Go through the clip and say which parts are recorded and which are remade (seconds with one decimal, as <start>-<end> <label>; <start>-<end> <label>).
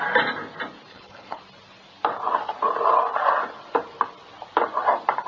0.0-0.9 recorded; 0.9-1.4 remade; 1.4-5.3 recorded